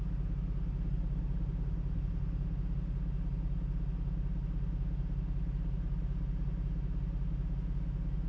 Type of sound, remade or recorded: recorded